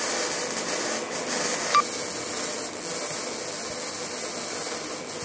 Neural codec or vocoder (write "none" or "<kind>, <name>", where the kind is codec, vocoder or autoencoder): none